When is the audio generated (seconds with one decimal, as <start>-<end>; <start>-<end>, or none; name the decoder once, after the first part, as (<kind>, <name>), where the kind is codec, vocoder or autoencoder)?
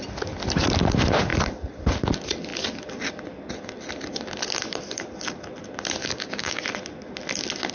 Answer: 6.0-6.6 (codec, DAC)